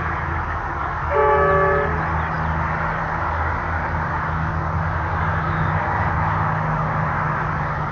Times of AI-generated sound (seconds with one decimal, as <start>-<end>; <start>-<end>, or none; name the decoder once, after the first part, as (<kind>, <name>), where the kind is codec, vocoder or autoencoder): 0.0-1.2 (codec, DAC); 3.0-7.9